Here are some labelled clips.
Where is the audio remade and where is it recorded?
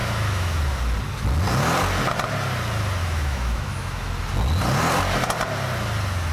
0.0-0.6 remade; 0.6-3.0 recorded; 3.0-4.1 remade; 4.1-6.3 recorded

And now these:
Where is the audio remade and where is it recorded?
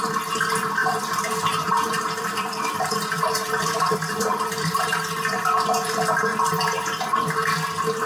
0.0-0.8 recorded; 0.8-5.4 remade; 5.4-8.1 recorded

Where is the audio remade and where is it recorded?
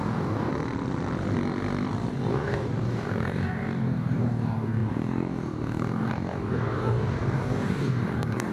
0.0-0.5 remade; 0.5-2.3 recorded; 2.3-8.5 remade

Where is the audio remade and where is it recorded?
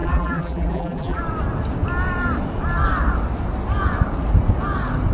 0.0-1.2 remade; 1.2-5.1 recorded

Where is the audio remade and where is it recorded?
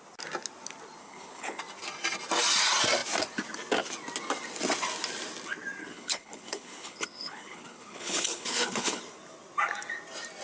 0.0-1.0 recorded; 1.0-1.6 remade; 1.6-5.8 recorded; 5.8-9.0 remade; 9.0-10.4 recorded